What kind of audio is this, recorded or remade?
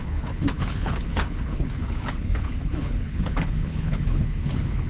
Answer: remade